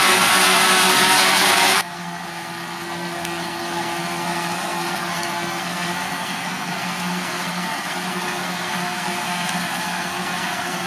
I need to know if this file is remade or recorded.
remade